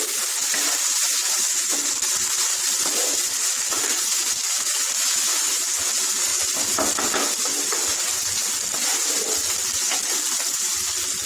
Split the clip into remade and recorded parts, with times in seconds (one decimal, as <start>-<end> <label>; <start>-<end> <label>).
0.0-11.3 recorded